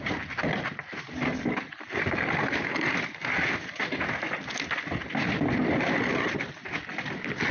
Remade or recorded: recorded